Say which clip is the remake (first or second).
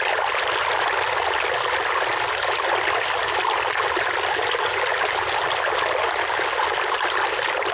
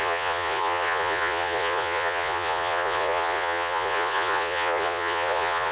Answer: second